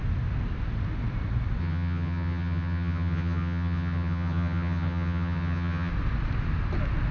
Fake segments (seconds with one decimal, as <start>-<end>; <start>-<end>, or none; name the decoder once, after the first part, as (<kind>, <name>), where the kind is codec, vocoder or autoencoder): 1.6-5.9 (vocoder, HiFi-GAN)